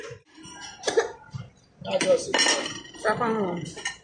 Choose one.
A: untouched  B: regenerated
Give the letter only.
A